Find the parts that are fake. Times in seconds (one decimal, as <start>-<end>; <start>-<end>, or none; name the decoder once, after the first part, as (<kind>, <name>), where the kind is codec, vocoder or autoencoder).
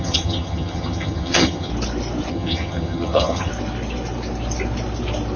0.0-1.7 (vocoder, HiFi-GAN); 2.3-3.5